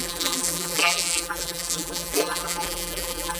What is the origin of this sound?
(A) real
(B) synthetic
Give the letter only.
B